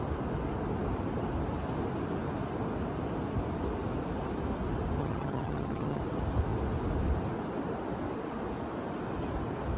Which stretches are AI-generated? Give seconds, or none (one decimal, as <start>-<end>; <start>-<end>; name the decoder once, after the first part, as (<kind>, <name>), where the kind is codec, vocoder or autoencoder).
5.0-6.0 (vocoder, HiFi-GAN)